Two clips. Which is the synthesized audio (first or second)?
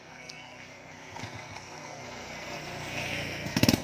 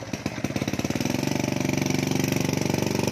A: first